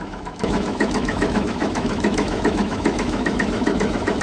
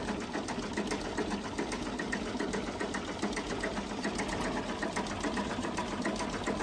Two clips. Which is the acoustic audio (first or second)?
second